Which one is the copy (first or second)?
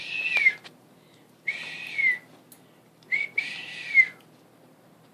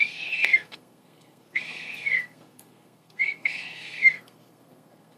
second